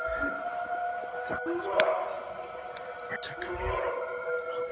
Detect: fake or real real